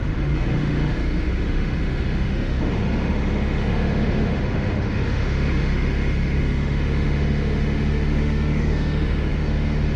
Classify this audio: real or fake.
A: fake